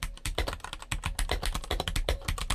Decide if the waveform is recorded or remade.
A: recorded